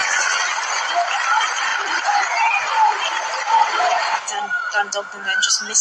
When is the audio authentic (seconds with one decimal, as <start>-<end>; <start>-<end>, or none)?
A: 0.6-3.5; 4.4-5.8

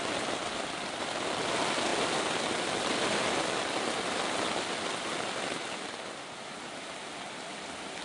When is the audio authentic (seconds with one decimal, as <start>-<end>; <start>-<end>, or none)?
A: 0.0-8.0